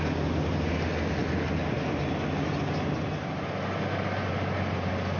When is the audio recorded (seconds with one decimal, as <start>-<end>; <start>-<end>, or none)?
0.0-5.2